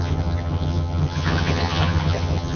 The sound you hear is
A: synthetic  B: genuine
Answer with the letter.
A